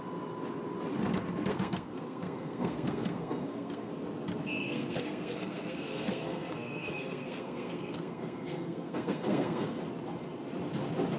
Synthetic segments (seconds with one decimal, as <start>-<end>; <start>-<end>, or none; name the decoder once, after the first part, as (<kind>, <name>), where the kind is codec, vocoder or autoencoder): 1.5-3.9 (codec, SNAC); 4.6-9.8